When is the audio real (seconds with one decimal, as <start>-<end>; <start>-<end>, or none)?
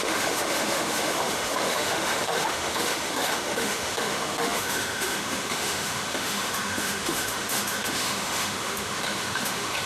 none